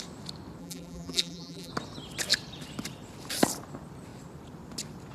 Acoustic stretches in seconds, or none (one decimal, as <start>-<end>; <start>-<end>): 0.0-0.6; 1.7-5.1

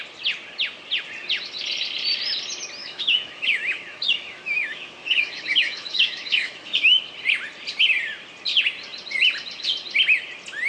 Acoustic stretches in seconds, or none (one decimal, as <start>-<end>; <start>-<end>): 0.0-2.8; 7.0-10.7

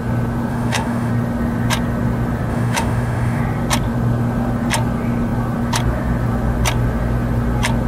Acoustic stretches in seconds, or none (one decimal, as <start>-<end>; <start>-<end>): 0.0-0.5; 1.1-2.5; 3.4-7.9

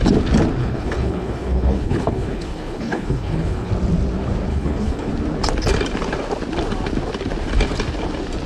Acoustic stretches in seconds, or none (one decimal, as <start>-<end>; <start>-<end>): 0.0-0.6; 3.7-4.5; 5.1-8.5